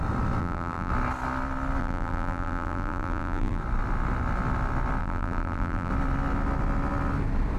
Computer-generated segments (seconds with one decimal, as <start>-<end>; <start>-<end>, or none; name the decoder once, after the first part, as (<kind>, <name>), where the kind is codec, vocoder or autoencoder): 0.4-0.9 (vocoder, BigVGAN v2); 1.8-3.6; 5.0-5.9